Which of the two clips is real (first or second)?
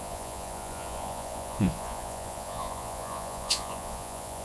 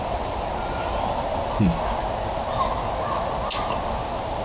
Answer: second